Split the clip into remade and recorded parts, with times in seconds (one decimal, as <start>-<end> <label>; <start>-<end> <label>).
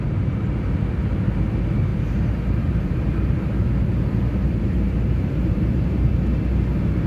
0.0-1.9 recorded; 1.9-6.1 remade; 6.1-7.1 recorded